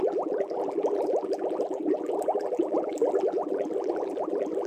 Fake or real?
fake